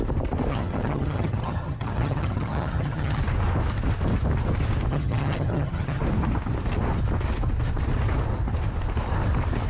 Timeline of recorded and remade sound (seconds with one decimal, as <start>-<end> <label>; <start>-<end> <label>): 0.0-0.5 recorded; 0.5-3.2 remade; 3.2-4.9 recorded; 4.9-6.0 remade; 6.0-9.7 recorded